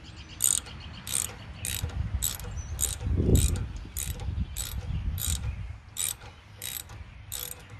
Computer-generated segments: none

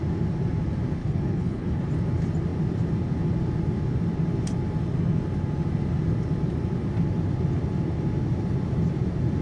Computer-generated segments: 1.0-1.8 (codec, HILCodec)

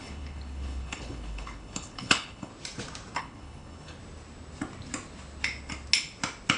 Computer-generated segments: 0.0-2.5 (codec, HILCodec); 3.2-4.0

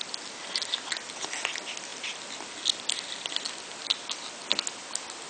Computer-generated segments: none

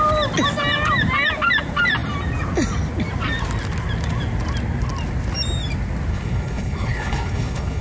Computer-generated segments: 6.1-7.8 (codec, HILCodec)